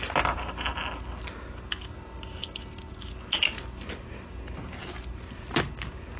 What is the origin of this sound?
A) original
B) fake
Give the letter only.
A